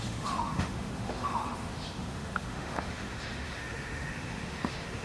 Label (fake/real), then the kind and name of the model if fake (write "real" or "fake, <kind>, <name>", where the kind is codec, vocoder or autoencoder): fake, autoencoder, DAC-VAE